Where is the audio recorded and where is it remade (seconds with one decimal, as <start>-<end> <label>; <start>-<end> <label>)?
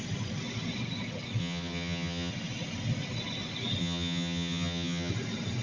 0.0-1.4 recorded; 1.4-2.3 remade; 2.3-3.8 recorded; 3.8-5.1 remade; 5.1-5.6 recorded